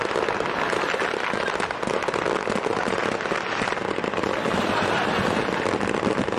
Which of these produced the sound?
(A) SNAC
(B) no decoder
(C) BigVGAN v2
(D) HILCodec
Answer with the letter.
B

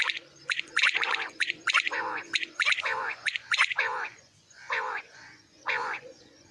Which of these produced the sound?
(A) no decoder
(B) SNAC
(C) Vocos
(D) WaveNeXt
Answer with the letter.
C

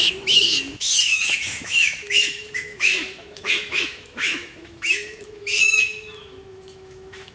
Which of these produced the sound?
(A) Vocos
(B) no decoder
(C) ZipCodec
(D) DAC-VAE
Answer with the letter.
D